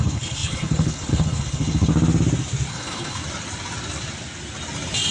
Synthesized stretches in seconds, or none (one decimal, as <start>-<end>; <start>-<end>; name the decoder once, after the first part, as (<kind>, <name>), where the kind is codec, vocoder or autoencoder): 0.0-1.9 (codec, HILCodec); 2.7-3.2